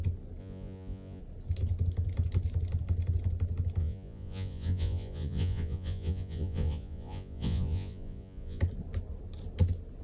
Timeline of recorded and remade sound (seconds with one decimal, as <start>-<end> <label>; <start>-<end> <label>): 0.0-0.4 recorded; 0.4-1.2 remade; 1.2-3.8 recorded; 3.8-8.6 remade; 8.6-10.0 recorded